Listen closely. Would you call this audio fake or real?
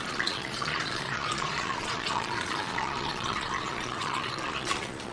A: fake